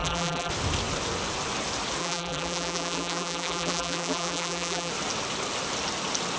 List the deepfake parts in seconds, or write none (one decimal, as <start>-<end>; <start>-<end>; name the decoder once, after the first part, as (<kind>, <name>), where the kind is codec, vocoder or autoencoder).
0.0-0.5 (vocoder, BigVGAN v2); 2.0-4.9